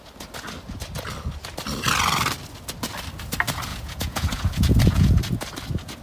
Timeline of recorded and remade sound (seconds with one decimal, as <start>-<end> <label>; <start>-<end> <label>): 0.0-3.7 recorded; 3.7-5.2 remade; 5.2-6.0 recorded